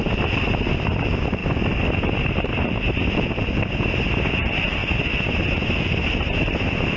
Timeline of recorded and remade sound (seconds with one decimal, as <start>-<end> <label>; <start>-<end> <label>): 0.0-7.0 recorded

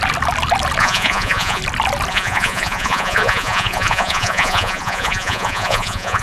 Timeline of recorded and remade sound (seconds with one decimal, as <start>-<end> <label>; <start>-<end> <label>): 0.0-0.8 recorded; 0.8-1.6 remade; 1.6-2.1 recorded; 2.1-6.2 remade

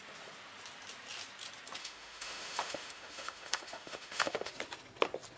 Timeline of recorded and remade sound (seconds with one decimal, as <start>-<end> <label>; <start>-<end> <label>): 0.0-1.8 recorded; 1.8-4.5 remade; 4.5-5.4 recorded

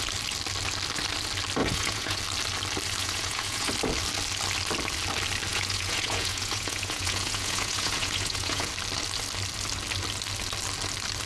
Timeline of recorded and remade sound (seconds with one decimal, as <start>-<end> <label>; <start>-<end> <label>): 0.0-1.6 recorded; 1.6-2.2 remade; 2.2-3.0 recorded; 3.0-3.7 remade; 3.7-5.5 recorded; 5.5-8.7 remade; 8.7-11.3 recorded

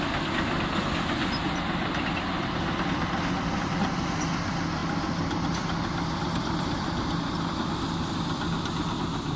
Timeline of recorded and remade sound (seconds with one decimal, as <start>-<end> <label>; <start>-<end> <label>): 0.0-9.4 recorded

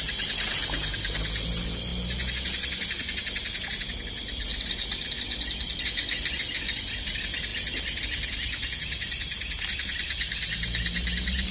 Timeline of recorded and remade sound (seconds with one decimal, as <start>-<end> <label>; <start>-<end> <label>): 0.0-4.5 recorded; 4.5-6.6 remade; 6.6-11.5 recorded

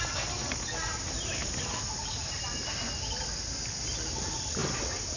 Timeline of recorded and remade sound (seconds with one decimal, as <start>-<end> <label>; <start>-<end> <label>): 0.0-5.2 recorded

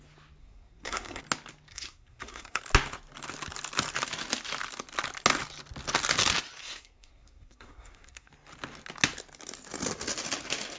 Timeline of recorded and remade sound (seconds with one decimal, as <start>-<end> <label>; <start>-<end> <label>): 0.0-0.4 recorded; 0.4-1.2 remade; 1.2-1.7 recorded; 1.7-2.6 remade; 2.6-6.6 recorded; 6.6-8.3 remade; 8.3-10.8 recorded